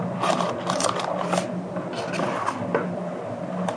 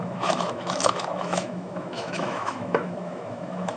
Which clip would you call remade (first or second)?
second